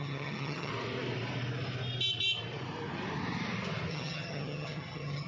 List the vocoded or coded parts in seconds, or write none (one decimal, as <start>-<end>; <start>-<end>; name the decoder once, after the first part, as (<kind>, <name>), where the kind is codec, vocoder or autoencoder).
0.0-0.7 (vocoder, HiFi-GAN); 3.9-5.3